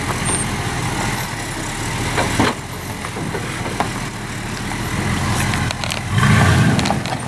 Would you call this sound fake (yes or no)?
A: no